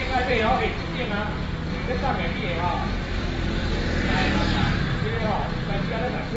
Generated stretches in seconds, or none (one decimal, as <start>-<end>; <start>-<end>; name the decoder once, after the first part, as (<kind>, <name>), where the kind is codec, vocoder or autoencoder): 0.0-0.9 (vocoder, BigVGAN v2); 1.7-4.2; 4.8-6.4